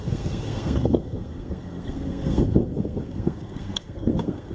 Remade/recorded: remade